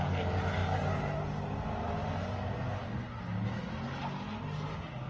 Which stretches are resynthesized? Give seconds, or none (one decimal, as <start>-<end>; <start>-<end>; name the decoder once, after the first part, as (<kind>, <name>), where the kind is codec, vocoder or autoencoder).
none